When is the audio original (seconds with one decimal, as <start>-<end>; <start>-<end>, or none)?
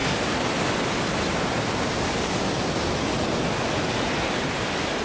0.0-5.0